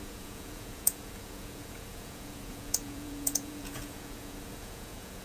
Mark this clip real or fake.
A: fake